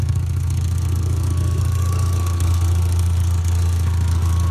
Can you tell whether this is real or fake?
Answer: fake